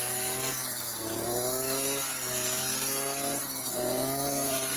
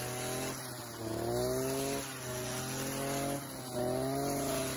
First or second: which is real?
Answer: second